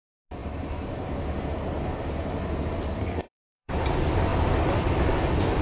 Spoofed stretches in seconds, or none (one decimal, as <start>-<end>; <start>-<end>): 3.0-3.7